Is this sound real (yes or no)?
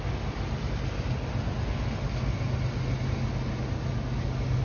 yes